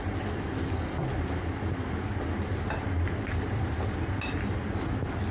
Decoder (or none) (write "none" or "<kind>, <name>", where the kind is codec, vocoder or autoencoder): none